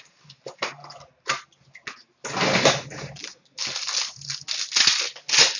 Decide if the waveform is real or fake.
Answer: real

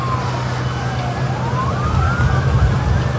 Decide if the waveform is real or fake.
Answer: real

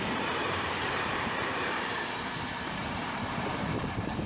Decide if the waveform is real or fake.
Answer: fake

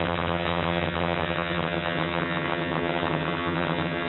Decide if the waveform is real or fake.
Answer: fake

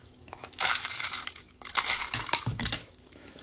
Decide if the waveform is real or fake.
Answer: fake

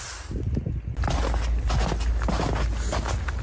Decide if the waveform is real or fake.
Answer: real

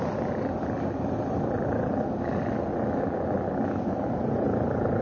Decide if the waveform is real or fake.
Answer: real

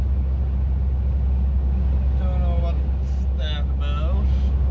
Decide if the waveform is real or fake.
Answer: real